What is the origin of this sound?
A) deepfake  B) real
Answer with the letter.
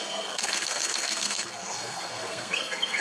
A